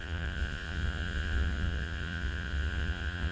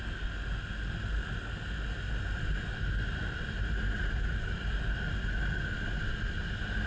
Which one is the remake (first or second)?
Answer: first